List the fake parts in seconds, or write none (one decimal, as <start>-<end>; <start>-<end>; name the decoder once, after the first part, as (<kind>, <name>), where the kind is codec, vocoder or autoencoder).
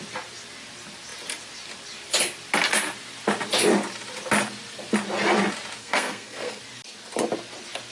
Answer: 5.8-6.6 (codec, SNAC)